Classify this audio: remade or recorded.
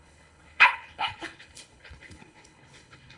remade